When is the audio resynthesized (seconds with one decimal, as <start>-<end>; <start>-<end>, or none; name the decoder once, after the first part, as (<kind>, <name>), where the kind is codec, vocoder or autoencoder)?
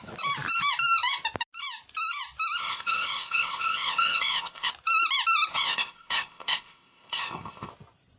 2.6-4.7 (codec, ZipCodec); 5.5-7.7